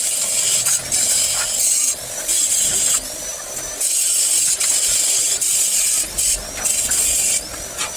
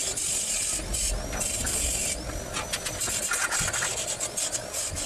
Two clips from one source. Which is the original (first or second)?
second